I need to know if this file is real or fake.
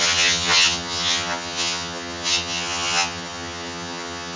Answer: fake